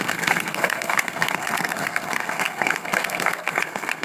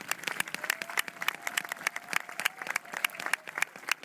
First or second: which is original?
second